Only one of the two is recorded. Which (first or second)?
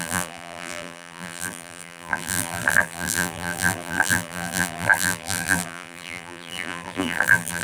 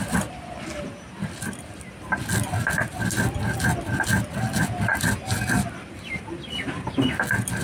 second